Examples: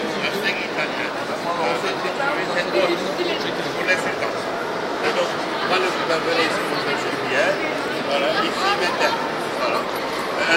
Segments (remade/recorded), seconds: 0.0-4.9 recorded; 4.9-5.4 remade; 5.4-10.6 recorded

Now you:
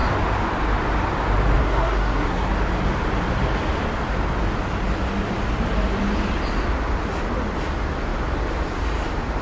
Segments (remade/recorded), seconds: 0.0-1.6 recorded; 1.6-2.5 remade; 2.5-9.4 recorded

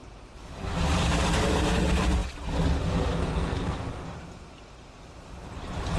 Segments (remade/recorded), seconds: 0.0-3.2 recorded; 3.2-3.8 remade; 3.8-6.0 recorded

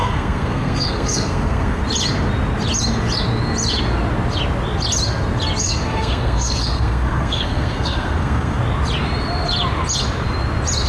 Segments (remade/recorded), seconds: 0.0-1.8 remade; 1.8-5.6 recorded; 5.6-8.6 remade; 8.6-10.9 recorded

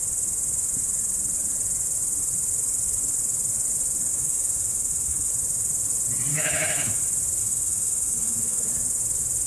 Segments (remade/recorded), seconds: 0.0-4.1 recorded; 4.1-5.3 remade; 5.3-6.3 recorded; 6.3-7.0 remade; 7.0-7.4 recorded; 7.4-8.7 remade; 8.7-9.5 recorded

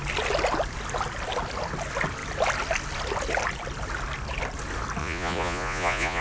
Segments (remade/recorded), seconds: 0.0-5.0 recorded; 5.0-6.2 remade

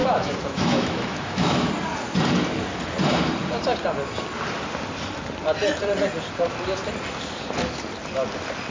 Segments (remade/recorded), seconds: 0.0-1.7 remade; 1.7-8.7 recorded

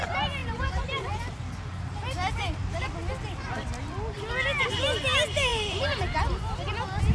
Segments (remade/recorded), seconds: 0.0-7.1 recorded